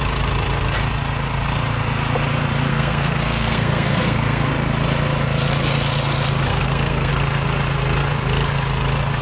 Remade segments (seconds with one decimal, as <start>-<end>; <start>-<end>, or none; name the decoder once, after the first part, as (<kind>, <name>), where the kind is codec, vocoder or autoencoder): 2.7-4.5 (codec, SNAC); 6.5-7.1